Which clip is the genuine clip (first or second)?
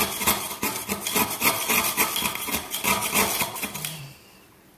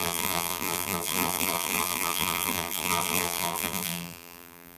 first